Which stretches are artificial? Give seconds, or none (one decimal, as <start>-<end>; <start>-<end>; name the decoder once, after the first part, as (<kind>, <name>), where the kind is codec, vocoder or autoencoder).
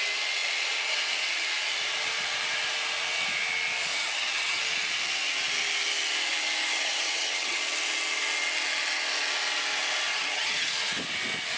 3.9-4.6 (vocoder, HiFi-GAN); 6.7-7.6; 10.1-10.7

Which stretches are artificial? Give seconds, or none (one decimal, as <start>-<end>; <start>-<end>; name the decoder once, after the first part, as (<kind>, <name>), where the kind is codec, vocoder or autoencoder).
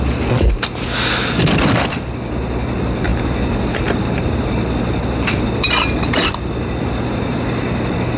none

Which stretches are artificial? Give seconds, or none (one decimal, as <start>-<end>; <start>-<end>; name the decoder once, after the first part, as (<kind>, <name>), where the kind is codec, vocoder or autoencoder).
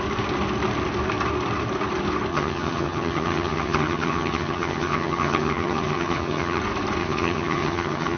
2.3-6.6 (vocoder, HiFi-GAN); 7.0-8.2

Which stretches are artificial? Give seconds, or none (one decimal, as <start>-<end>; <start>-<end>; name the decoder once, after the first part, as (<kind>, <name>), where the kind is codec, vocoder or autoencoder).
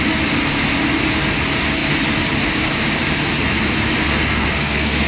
4.1-5.1 (codec, SNAC)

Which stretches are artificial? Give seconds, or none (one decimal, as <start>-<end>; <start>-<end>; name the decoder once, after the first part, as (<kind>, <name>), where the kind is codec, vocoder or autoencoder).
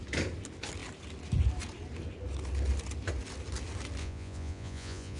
4.0-5.2 (vocoder, Vocos)